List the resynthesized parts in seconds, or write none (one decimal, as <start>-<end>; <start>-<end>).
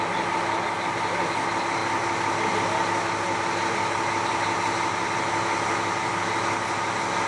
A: none